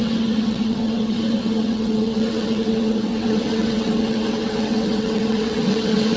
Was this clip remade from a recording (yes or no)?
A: yes